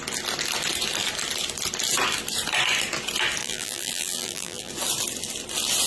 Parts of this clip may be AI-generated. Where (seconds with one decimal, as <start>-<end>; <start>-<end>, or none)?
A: 3.4-4.7

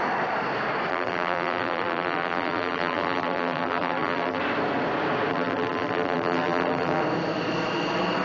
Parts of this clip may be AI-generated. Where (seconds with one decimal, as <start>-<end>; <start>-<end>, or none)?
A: 0.9-4.4; 5.3-7.0

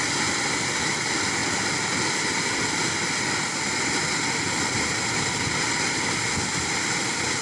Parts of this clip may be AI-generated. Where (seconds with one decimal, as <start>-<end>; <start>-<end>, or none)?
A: none

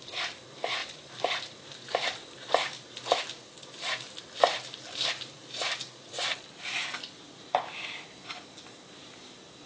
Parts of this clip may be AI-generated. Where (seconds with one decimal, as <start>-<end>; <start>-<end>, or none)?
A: 0.8-3.2

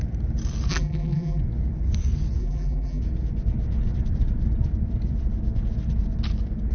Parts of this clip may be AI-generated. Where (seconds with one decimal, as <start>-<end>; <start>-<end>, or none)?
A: 0.7-1.4; 2.4-3.0